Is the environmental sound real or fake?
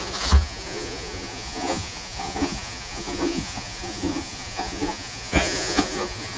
fake